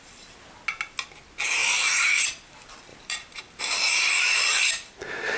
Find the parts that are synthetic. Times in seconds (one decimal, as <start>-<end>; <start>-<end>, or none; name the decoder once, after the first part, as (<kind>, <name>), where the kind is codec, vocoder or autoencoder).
1.6-2.3 (vocoder, BigVGAN v2); 2.9-3.9